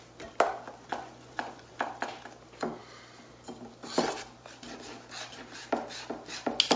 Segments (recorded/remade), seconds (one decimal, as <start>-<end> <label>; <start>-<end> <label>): 0.0-0.9 recorded; 0.9-1.8 remade; 1.8-6.8 recorded